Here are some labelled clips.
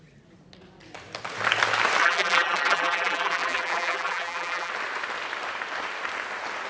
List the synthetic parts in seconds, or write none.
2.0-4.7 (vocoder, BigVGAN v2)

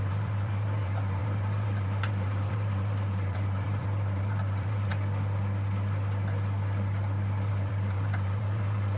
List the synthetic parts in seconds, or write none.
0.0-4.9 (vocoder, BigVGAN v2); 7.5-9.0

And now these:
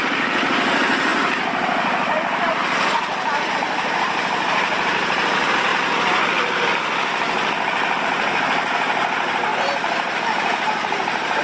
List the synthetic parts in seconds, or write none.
0.0-5.7 (vocoder, BigVGAN v2); 8.0-11.4

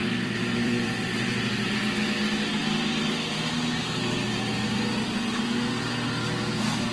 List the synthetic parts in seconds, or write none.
0.0-1.1 (vocoder, BigVGAN v2)

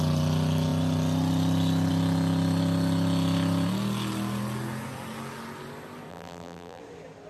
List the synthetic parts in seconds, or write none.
6.1-6.8 (vocoder, BigVGAN v2)